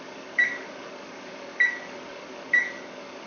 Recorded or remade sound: remade